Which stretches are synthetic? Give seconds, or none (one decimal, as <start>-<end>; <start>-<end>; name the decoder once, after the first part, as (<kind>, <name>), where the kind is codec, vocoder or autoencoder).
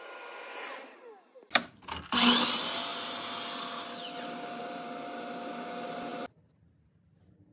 none